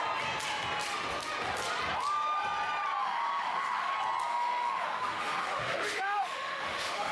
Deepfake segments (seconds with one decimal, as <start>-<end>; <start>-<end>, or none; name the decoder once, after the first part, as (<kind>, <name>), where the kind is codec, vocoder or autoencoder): 3.0-3.9 (autoencoder, DAC-VAE); 4.3-7.1